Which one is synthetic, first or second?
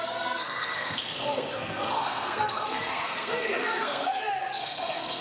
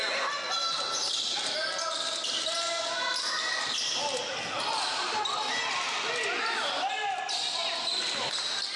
first